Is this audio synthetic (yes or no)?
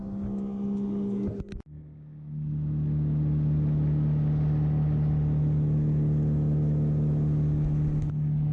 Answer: no